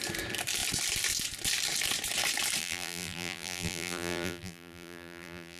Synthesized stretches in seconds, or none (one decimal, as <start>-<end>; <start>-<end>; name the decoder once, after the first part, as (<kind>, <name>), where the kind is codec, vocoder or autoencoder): 2.6-5.6 (vocoder, BigVGAN v2)